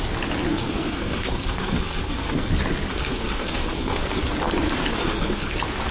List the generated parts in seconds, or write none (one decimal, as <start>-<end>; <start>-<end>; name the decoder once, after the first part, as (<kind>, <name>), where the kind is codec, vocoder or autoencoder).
0.5-2.5 (codec, SNAC); 2.9-4.3; 4.9-5.5